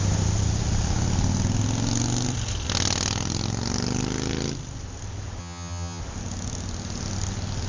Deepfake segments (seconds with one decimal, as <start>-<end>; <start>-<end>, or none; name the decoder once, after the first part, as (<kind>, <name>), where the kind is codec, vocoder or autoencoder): 5.4-6.0 (vocoder, HiFi-GAN)

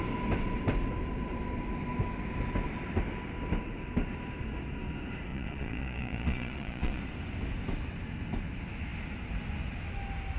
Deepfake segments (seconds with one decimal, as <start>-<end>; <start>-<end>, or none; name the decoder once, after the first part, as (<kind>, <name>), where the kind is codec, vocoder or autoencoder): 5.3-7.0 (vocoder, Vocos)

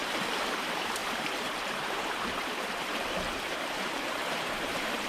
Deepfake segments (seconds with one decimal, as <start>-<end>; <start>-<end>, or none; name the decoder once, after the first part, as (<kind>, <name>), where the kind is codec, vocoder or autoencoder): 0.0-5.1 (vocoder, BigVGAN v2)

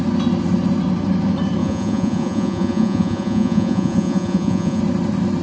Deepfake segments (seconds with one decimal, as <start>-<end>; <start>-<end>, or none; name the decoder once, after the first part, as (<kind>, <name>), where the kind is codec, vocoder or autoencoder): 1.6-4.8 (vocoder, Vocos)

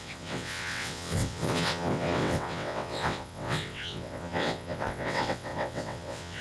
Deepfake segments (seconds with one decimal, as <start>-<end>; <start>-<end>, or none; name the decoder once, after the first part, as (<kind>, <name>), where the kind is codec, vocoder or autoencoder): 0.0-6.4 (vocoder, WaveNeXt)

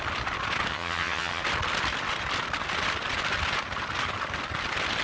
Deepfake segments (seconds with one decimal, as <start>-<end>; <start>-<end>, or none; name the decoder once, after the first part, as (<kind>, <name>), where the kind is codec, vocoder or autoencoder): 0.7-1.4 (vocoder, HiFi-GAN)